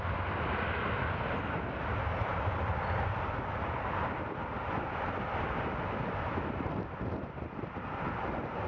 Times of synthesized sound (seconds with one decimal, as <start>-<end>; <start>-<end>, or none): none